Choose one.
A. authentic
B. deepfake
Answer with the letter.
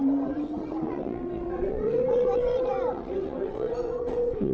B